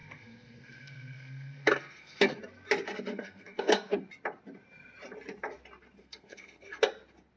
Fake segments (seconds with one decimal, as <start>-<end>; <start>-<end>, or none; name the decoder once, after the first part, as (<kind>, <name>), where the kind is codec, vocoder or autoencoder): 0.0-2.4 (codec, SNAC); 3.1-4.0; 6.0-6.8